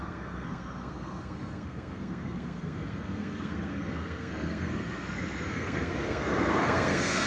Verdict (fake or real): fake